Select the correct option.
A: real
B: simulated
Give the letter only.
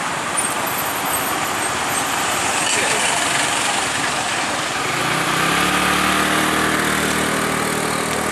A